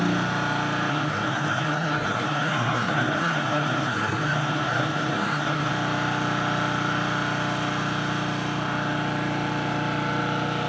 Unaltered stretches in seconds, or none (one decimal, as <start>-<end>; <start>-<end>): 0.0-0.9; 5.7-10.7